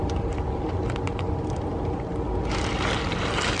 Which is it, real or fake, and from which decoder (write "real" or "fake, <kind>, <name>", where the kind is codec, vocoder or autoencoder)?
real